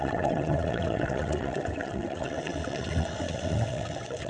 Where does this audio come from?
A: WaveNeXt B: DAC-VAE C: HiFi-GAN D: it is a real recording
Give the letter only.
A